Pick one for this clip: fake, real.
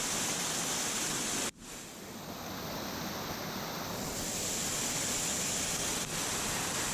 real